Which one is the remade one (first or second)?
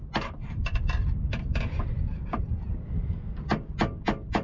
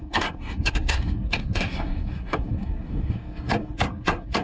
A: second